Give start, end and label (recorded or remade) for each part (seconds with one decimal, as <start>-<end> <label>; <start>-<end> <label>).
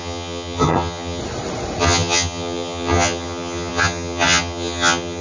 0.0-1.2 remade; 1.2-1.8 recorded; 1.8-5.2 remade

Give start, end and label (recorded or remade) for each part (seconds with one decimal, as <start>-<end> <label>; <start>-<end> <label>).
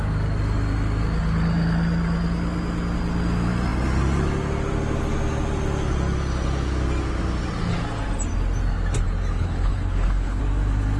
0.0-9.3 recorded; 9.3-10.4 remade; 10.4-11.0 recorded